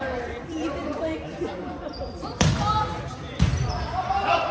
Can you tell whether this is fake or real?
fake